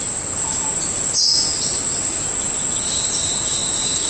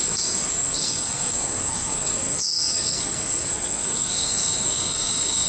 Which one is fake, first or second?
second